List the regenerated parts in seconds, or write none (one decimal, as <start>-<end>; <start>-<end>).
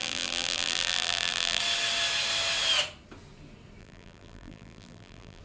0.0-1.6; 3.8-5.4